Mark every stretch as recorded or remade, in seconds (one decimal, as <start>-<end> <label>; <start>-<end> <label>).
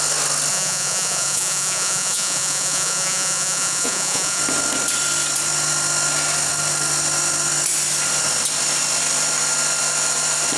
0.0-0.5 recorded; 0.5-4.4 remade; 4.4-10.6 recorded